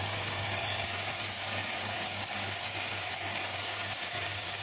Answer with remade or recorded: remade